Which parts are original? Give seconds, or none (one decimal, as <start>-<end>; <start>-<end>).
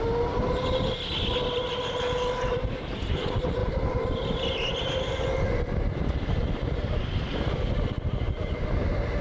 0.0-9.2